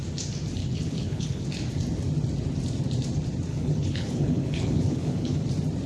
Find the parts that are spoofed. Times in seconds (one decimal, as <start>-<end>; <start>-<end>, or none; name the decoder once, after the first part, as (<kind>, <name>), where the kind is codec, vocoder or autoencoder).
0.6-1.4 (codec, HILCodec); 3.5-5.4